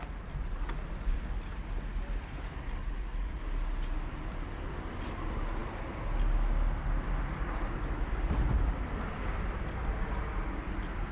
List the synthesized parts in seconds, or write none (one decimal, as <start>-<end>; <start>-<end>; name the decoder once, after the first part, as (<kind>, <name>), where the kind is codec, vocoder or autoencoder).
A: 2.8-3.4 (vocoder, Vocos)